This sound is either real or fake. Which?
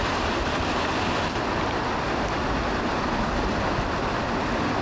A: real